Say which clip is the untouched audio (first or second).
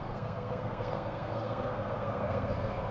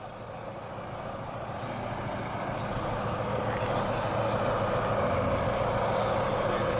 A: second